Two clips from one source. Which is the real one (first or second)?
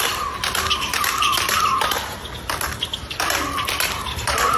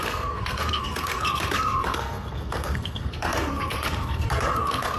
first